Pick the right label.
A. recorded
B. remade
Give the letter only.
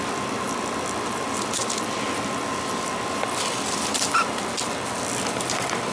A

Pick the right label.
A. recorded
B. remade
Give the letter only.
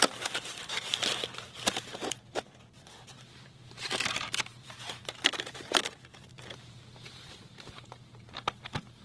B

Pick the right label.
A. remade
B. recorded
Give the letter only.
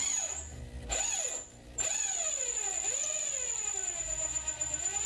B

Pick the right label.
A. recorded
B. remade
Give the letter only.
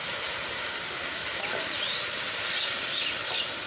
B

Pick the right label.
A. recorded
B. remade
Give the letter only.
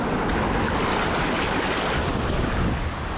A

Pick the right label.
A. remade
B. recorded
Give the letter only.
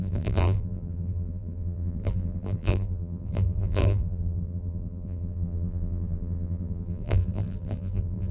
A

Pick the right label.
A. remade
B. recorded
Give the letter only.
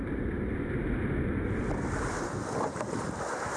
B